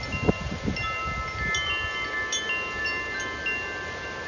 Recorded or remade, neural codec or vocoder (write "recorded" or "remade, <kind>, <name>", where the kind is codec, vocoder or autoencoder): recorded